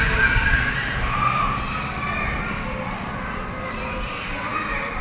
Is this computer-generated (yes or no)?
no